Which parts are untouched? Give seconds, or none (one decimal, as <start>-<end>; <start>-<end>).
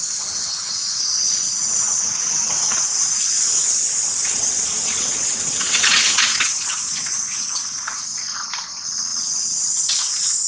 none